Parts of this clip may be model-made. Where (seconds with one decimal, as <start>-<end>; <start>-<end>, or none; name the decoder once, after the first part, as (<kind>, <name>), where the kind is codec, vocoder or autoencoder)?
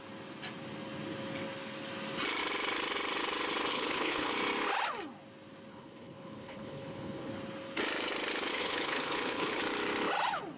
3.7-4.3 (codec, HILCodec); 5.7-7.3; 8.5-9.6